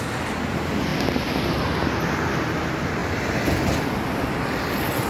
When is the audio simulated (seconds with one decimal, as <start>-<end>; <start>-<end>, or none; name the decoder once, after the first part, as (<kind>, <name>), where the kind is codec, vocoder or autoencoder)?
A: none